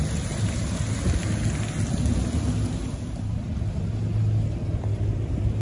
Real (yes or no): yes